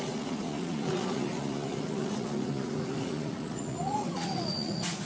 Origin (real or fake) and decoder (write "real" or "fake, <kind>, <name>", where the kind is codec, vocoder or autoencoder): fake, vocoder, Vocos